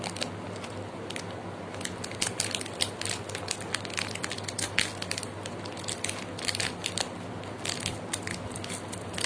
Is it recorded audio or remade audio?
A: recorded